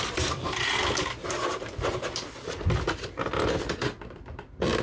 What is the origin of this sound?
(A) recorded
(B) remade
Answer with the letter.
B